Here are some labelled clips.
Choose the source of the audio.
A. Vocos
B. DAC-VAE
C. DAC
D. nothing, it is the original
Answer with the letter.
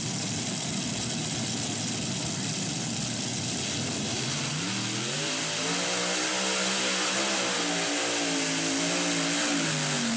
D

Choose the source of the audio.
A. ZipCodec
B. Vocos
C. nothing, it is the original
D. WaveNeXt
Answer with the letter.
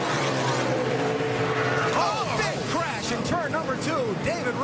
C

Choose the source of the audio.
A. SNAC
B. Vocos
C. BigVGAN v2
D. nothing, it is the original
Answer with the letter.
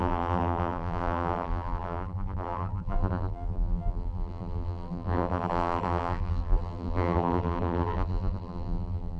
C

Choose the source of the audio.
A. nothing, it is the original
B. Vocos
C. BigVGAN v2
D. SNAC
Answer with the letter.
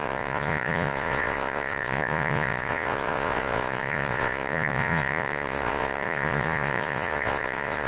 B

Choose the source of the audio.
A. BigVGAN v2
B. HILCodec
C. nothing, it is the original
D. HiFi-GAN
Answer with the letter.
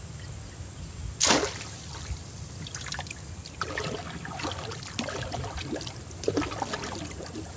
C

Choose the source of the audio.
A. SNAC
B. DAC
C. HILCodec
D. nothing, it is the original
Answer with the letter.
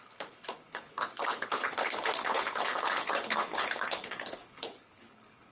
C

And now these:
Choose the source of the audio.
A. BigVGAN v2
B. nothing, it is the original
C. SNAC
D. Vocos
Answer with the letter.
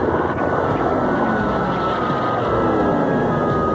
B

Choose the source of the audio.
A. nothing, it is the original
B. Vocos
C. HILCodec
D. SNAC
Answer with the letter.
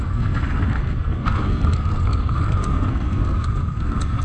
D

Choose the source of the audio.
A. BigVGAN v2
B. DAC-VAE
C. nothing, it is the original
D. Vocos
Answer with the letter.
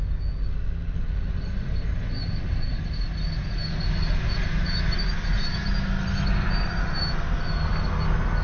C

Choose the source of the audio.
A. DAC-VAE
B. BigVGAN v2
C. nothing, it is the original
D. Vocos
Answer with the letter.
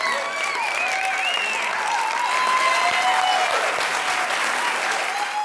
C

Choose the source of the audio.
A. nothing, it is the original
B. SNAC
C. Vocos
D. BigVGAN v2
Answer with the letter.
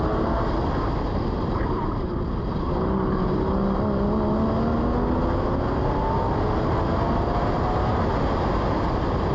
A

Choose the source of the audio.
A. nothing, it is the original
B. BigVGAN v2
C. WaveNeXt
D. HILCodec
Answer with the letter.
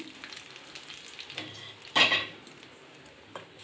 A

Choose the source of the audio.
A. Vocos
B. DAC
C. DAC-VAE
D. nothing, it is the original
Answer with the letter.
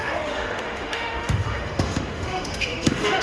C